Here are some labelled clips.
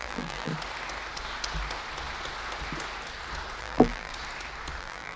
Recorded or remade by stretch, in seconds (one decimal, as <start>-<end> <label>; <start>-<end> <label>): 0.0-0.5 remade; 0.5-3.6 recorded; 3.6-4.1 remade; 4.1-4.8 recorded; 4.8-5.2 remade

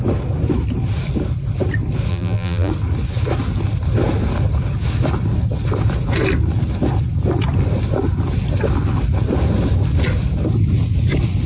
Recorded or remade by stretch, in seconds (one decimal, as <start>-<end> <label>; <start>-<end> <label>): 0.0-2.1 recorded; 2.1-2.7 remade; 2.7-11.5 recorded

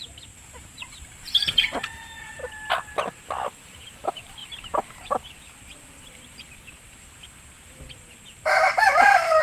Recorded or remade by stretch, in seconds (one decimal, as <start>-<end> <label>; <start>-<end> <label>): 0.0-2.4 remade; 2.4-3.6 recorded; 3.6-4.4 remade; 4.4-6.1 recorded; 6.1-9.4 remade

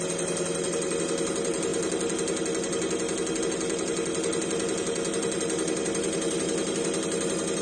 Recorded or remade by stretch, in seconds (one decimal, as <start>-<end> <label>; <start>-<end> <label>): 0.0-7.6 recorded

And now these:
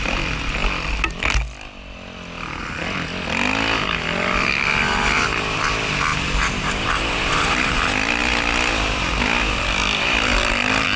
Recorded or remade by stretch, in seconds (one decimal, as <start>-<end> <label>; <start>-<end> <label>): 0.0-6.1 recorded; 6.1-7.7 remade; 7.7-11.0 recorded

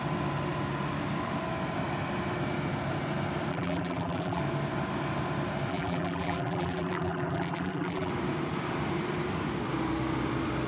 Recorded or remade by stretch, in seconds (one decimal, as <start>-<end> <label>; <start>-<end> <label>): 0.0-3.5 recorded; 3.5-4.4 remade; 4.4-5.7 recorded; 5.7-8.1 remade; 8.1-10.7 recorded